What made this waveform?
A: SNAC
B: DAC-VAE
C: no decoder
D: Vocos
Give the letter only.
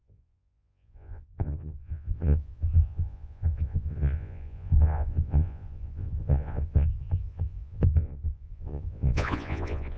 D